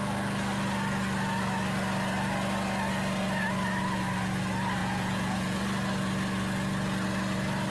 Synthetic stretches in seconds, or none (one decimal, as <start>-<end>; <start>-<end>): 4.8-5.6

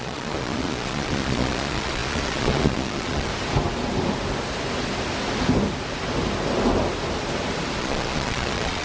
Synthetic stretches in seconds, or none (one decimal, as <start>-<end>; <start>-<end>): 0.0-3.3; 7.8-8.8

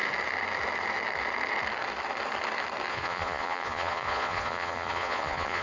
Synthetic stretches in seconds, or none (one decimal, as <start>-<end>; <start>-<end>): 2.9-5.6

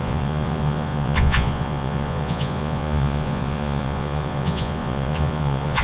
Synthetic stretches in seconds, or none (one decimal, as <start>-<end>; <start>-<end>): 0.0-5.8

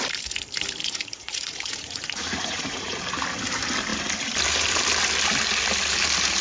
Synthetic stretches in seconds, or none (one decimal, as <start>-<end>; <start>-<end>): 0.8-3.0

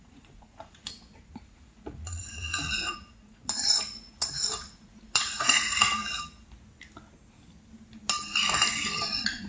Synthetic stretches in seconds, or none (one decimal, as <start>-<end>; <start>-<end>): 0.0-6.0; 9.0-9.5

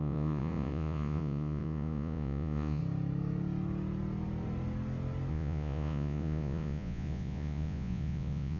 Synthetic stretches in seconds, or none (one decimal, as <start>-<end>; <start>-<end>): 0.0-2.8; 5.3-8.6

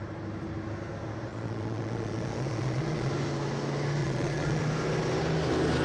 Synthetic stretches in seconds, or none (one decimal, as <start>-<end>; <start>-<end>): 1.3-3.1; 4.0-4.6